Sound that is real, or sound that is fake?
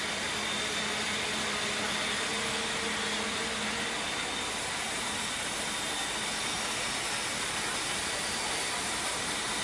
real